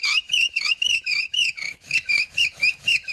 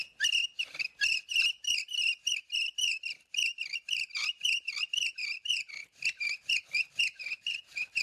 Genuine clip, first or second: second